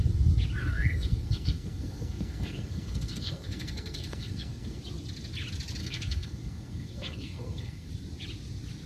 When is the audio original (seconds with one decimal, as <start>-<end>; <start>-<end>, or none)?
0.0-0.6; 4.8-5.8; 7.9-8.9